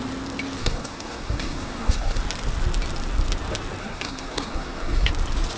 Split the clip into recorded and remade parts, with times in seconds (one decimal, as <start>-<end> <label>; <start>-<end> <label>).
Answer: 0.0-0.6 recorded; 0.6-2.2 remade; 2.2-3.8 recorded; 3.8-5.1 remade; 5.1-5.6 recorded